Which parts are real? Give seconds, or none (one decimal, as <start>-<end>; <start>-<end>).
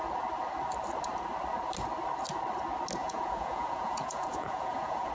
0.0-3.0